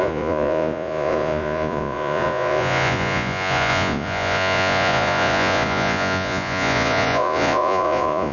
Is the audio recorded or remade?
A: remade